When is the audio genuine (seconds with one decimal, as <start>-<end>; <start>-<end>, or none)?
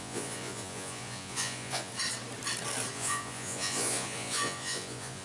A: 1.9-2.9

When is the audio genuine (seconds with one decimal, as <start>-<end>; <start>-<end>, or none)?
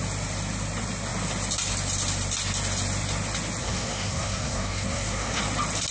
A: 0.0-3.6; 5.4-5.9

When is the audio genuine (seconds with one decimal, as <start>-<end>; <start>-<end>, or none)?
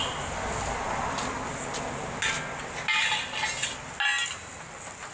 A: 0.0-5.1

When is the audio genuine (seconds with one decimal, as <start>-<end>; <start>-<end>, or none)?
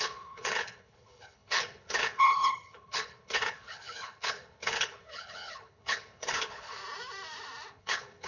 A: 6.8-7.7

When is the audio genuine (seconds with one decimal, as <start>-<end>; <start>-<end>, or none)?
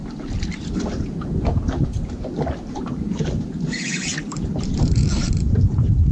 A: 0.0-2.4